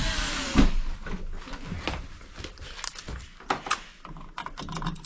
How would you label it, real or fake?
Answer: real